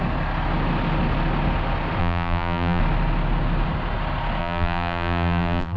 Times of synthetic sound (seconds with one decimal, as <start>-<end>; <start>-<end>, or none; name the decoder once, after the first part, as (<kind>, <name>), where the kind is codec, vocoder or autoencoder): 2.0-2.8 (vocoder, BigVGAN v2); 4.4-5.8